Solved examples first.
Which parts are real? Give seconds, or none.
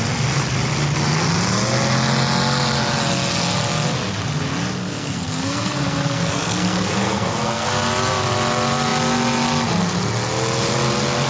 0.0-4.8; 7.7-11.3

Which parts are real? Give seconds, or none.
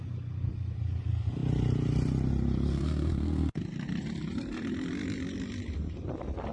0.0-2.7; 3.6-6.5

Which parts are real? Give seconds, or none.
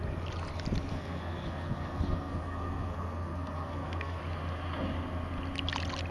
0.0-0.9; 4.2-6.1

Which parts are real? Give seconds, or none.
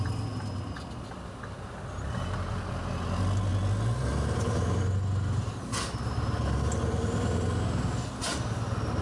0.0-9.0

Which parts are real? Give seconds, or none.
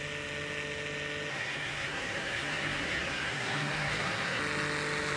0.0-1.3; 4.4-5.2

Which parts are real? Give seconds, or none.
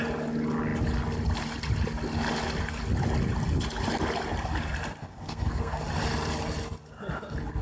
0.0-5.0; 5.8-7.6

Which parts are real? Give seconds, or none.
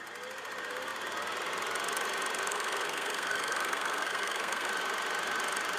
0.0-2.5; 4.7-5.8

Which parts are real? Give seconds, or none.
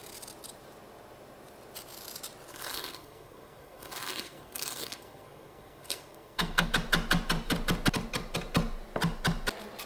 0.0-2.5; 6.7-9.9